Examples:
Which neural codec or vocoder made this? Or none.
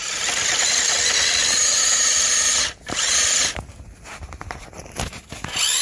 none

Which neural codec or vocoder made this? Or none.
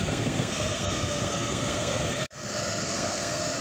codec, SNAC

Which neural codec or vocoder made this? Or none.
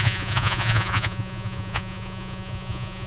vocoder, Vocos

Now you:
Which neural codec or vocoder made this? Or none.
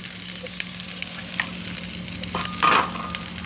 none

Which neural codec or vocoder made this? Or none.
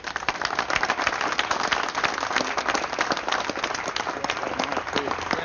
none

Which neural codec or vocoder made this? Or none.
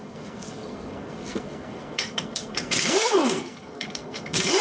codec, SNAC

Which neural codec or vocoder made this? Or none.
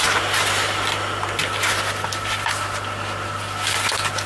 none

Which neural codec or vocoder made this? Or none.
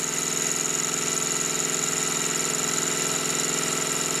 none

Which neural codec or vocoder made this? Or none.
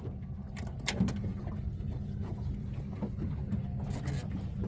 none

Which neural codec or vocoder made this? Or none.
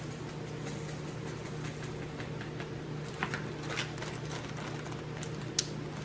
none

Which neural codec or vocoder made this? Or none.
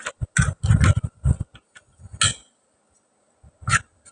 none